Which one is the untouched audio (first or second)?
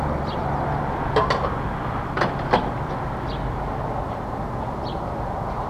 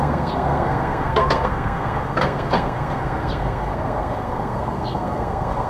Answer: first